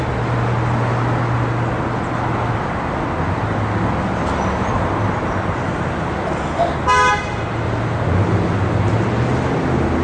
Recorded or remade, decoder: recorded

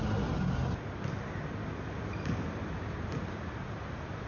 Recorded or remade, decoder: recorded